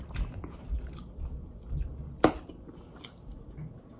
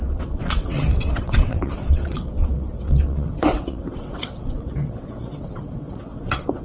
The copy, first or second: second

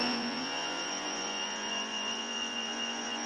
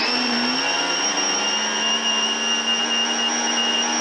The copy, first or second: first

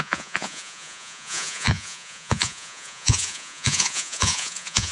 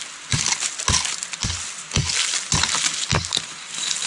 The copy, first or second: first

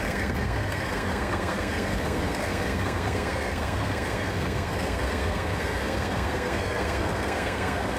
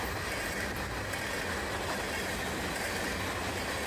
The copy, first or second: first